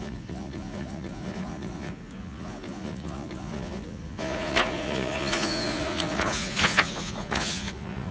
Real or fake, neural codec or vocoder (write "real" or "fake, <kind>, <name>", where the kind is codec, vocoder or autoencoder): fake, vocoder, Vocos